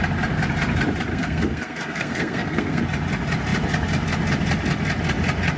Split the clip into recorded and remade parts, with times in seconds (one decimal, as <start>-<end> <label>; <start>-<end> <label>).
0.0-1.1 recorded; 1.1-2.8 remade; 2.8-5.6 recorded